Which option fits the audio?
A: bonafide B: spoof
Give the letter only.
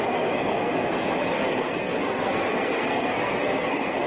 B